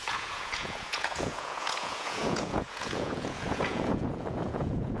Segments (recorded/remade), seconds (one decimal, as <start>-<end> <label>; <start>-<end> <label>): 0.0-5.0 remade

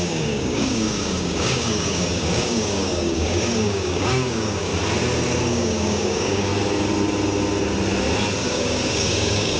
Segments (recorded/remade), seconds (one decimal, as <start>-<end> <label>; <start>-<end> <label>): 0.0-4.7 remade; 4.7-5.5 recorded; 5.5-6.5 remade; 6.5-8.5 recorded; 8.5-9.6 remade

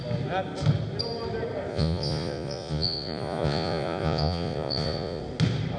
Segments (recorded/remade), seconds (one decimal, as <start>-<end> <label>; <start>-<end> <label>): 0.0-1.7 recorded; 1.7-5.2 remade; 5.2-5.8 recorded

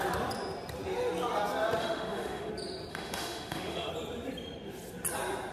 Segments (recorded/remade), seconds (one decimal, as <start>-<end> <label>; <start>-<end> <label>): 0.0-1.8 recorded; 1.8-2.5 remade; 2.5-2.9 recorded; 2.9-3.9 remade; 3.9-5.5 recorded

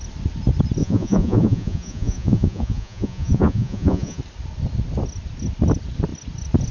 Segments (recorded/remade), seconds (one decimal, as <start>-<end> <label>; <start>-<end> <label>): 0.0-0.8 recorded; 0.8-4.2 remade; 4.2-6.7 recorded

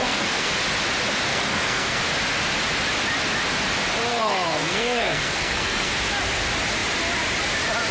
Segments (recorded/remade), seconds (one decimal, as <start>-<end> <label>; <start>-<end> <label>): 0.0-0.5 remade; 0.5-1.3 recorded; 1.3-2.0 remade; 2.0-4.1 recorded; 4.1-5.9 remade; 5.9-7.9 recorded

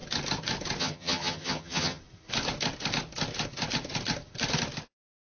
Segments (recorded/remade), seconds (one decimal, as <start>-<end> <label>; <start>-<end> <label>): 0.0-0.8 recorded; 0.8-2.0 remade; 2.0-5.4 recorded